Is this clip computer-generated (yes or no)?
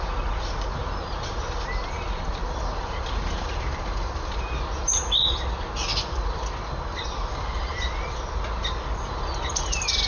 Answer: no